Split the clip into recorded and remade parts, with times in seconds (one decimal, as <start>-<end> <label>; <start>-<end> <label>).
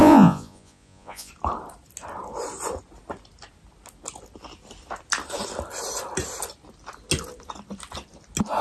0.0-1.3 remade; 1.3-8.6 recorded